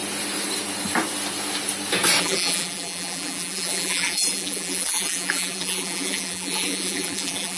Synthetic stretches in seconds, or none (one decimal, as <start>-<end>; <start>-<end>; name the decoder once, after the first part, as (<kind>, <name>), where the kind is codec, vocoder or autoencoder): 2.2-7.6 (vocoder, BigVGAN v2)